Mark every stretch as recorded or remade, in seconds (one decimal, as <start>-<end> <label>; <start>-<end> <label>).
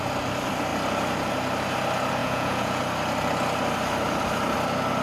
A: 0.0-2.2 recorded; 2.2-2.8 remade; 2.8-5.0 recorded